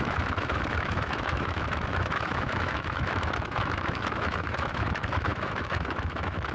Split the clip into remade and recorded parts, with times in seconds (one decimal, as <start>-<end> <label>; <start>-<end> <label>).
0.0-6.5 remade